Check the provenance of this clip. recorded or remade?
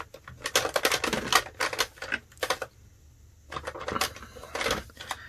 recorded